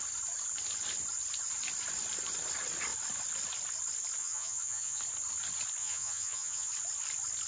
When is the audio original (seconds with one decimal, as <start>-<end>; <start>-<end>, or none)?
0.0-4.2; 5.0-5.8; 6.7-7.5